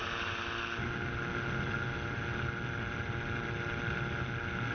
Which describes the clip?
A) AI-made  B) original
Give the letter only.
B